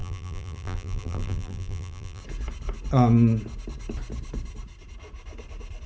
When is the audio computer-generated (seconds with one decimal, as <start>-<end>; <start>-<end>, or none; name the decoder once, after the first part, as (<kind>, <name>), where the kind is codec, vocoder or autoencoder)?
0.0-2.2 (vocoder, BigVGAN v2)